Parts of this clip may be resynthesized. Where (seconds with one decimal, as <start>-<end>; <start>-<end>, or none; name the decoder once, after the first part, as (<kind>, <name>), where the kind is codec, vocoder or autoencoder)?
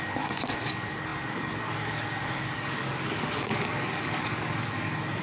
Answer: 0.0-5.2 (codec, DAC)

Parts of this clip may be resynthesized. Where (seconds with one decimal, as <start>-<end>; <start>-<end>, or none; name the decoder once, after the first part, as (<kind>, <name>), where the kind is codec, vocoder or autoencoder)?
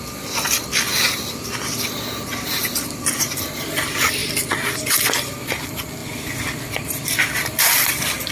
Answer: 0.0-4.2 (vocoder, BigVGAN v2); 5.0-6.0; 7.6-8.3